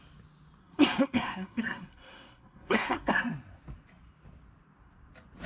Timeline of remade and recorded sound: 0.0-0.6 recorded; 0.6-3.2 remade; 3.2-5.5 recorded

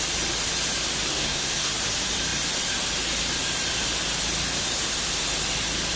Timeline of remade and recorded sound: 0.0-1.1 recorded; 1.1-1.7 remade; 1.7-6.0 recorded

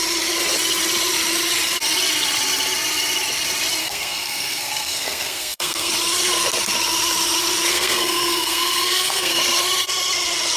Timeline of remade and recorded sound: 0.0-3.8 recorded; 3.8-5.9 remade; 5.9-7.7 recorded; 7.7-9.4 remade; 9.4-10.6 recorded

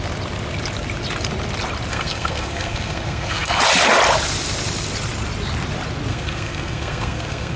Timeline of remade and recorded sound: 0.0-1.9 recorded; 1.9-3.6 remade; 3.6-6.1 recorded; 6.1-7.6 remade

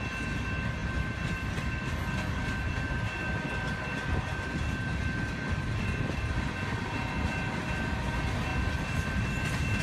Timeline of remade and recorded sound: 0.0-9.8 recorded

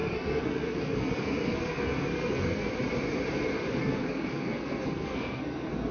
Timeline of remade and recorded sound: 0.0-2.7 remade; 2.7-3.8 recorded; 3.8-5.9 remade

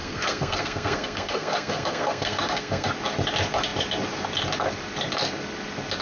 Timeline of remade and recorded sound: 0.0-2.9 remade; 2.9-6.0 recorded